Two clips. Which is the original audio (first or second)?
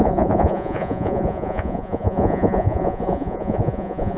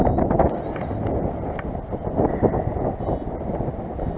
second